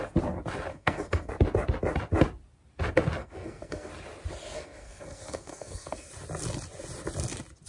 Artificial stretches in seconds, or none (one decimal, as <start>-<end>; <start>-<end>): 0.7-1.3; 3.2-3.9; 4.4-6.1